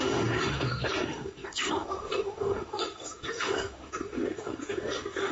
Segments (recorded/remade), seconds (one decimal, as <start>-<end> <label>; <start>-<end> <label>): 0.0-5.3 remade

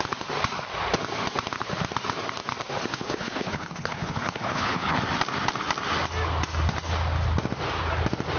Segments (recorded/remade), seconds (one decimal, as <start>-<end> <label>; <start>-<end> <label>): 0.0-2.9 recorded; 2.9-5.0 remade; 5.0-8.4 recorded

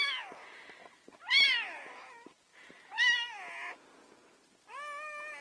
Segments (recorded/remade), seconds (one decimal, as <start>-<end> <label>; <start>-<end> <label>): 0.0-5.4 recorded

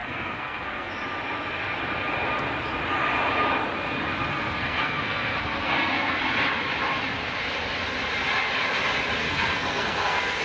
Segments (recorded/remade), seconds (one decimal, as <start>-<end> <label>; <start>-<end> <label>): 0.0-0.9 remade; 0.9-4.3 recorded; 4.3-6.2 remade; 6.2-9.2 recorded; 9.2-10.4 remade

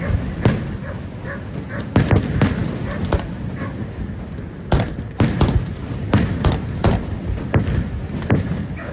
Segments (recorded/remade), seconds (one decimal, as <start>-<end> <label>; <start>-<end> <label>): 0.0-8.9 recorded

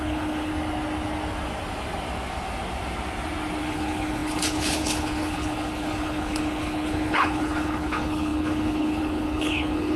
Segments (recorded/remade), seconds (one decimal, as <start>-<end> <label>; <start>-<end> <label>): 0.0-0.5 remade; 0.5-3.6 recorded; 3.6-10.0 remade

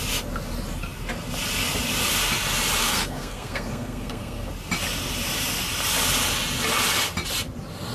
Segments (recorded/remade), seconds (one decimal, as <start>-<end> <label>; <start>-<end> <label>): 0.0-2.8 recorded; 2.8-4.5 remade; 4.5-7.9 recorded